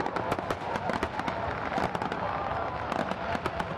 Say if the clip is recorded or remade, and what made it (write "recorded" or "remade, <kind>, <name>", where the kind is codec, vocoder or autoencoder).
recorded